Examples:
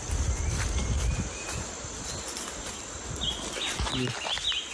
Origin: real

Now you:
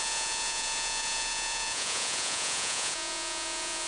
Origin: fake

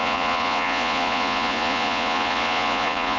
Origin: fake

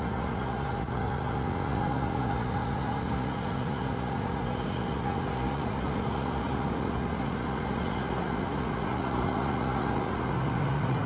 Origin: fake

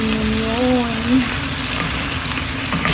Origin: real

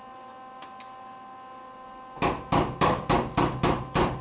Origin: real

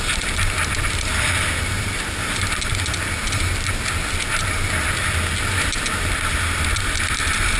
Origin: real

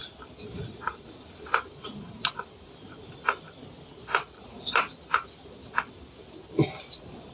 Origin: real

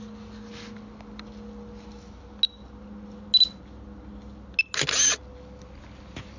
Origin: real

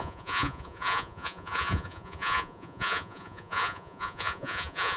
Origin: fake